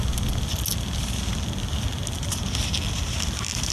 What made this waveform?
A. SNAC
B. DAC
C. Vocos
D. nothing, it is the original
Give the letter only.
D